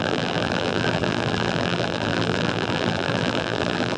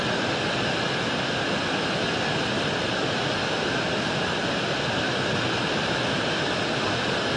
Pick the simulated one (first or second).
first